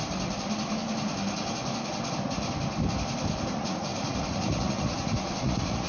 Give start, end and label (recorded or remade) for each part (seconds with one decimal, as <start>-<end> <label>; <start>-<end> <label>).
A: 0.0-3.5 recorded; 3.5-5.9 remade